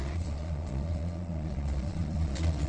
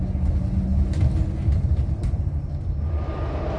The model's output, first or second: first